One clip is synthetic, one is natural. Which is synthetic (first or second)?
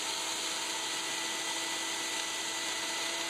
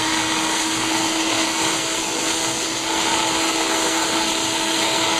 second